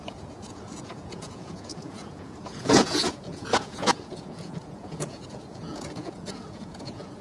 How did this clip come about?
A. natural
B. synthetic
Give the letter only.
B